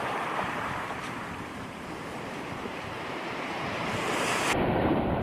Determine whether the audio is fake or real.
fake